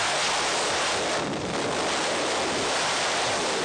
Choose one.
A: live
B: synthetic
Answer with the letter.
A